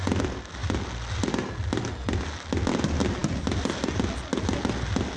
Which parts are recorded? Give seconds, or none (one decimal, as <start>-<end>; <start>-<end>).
0.0-5.2